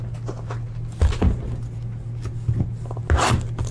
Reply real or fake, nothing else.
real